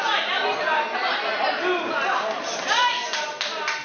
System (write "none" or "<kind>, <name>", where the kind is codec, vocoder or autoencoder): none